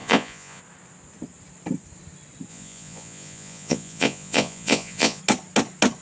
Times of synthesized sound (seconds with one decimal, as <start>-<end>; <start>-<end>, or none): 0.0-0.6; 2.5-5.2